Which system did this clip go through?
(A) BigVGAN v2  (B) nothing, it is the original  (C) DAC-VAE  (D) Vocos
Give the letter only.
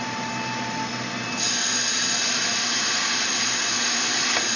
B